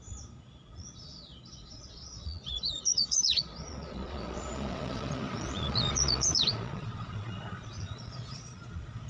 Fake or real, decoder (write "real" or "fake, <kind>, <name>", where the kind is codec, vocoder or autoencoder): fake, vocoder, Vocos